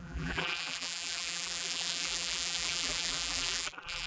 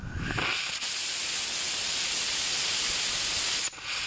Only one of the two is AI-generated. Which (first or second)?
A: first